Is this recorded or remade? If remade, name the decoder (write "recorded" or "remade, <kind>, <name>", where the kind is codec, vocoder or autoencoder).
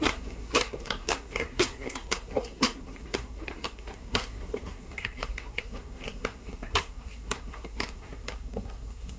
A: remade, codec, SNAC